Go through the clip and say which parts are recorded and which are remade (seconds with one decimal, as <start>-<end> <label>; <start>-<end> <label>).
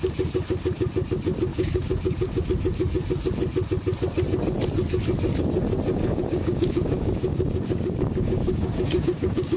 0.0-1.5 recorded; 1.5-2.4 remade; 2.4-5.9 recorded; 5.9-9.6 remade